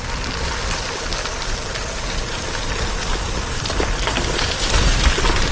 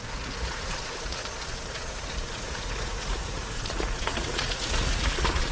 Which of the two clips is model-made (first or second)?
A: second